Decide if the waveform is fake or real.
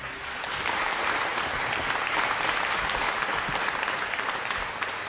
real